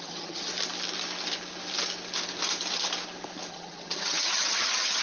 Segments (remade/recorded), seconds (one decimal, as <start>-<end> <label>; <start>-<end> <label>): 0.0-0.5 remade; 0.5-3.5 recorded; 3.5-5.0 remade